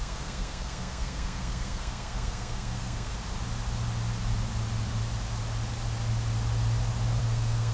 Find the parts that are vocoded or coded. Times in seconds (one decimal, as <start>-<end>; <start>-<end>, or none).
0.0-3.1; 7.2-7.7